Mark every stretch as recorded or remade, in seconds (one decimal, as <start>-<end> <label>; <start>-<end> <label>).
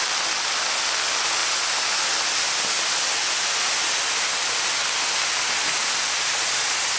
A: 0.0-7.0 recorded